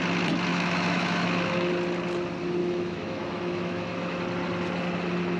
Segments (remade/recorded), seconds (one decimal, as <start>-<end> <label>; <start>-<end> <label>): 0.0-0.5 recorded; 0.5-1.7 remade; 1.7-2.6 recorded; 2.6-4.2 remade; 4.2-5.4 recorded